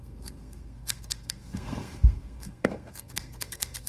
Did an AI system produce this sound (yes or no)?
yes